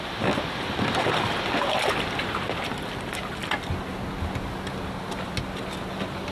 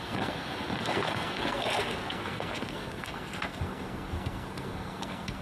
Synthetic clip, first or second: second